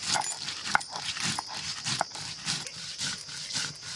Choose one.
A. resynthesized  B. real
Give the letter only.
B